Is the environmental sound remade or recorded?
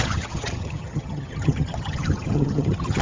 remade